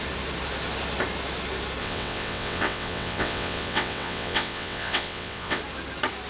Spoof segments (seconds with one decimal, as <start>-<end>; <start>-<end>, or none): 1.8-5.6